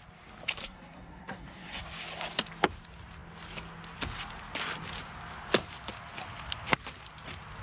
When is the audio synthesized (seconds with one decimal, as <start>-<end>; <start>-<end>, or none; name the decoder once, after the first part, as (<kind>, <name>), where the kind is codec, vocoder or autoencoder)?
0.6-1.8 (codec, SNAC)